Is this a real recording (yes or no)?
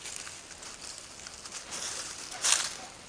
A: yes